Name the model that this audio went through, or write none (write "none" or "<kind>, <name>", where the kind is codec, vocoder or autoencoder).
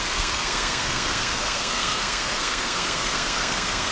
codec, SNAC